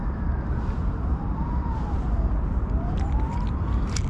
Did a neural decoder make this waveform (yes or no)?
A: no